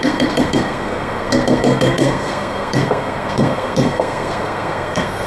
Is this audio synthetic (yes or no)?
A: yes